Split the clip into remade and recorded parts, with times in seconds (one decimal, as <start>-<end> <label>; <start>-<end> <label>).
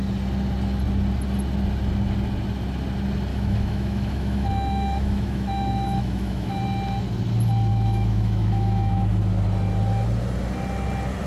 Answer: 0.0-3.3 recorded; 3.3-6.6 remade; 6.6-7.7 recorded; 7.7-9.2 remade; 9.2-11.3 recorded